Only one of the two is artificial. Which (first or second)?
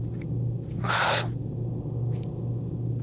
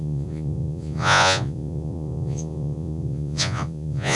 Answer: second